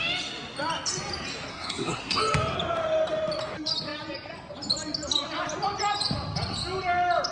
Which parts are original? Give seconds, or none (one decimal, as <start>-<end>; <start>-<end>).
0.0-1.5; 2.2-7.3